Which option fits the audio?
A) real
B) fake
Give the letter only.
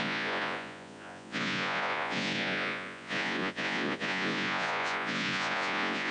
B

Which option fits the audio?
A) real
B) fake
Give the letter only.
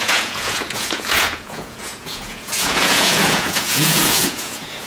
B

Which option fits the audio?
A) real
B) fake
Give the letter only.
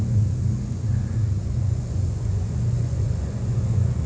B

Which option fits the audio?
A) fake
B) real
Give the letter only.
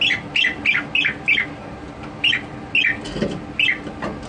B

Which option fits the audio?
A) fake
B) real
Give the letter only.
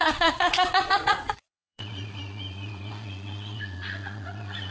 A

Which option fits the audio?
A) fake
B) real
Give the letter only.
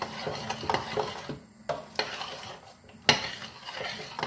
B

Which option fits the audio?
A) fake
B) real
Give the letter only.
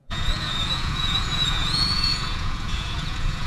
A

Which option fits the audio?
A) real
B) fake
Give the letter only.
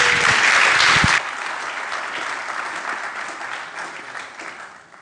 A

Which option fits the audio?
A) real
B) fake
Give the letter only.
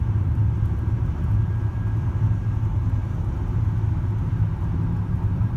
A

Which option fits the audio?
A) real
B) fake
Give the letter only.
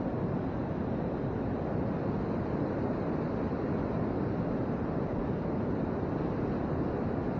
A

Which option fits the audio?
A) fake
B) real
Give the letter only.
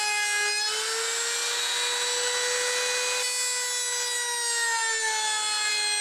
B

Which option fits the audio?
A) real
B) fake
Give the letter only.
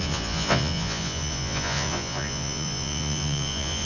B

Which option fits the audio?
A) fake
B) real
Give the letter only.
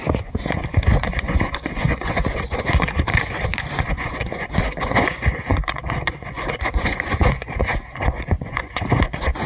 A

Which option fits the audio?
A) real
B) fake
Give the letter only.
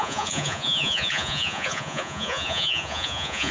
B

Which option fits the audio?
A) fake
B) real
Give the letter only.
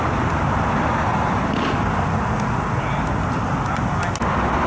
B